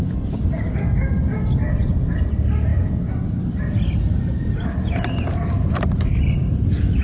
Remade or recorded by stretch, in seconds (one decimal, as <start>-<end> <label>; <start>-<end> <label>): 0.0-7.0 recorded